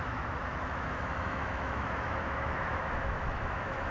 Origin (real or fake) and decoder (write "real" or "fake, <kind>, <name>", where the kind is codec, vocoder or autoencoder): fake, autoencoder, DAC-VAE